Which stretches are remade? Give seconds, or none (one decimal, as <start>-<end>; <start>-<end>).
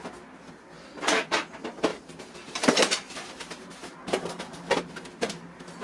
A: 1.9-3.3; 3.8-4.9